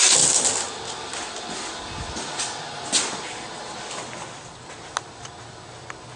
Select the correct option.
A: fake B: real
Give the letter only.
B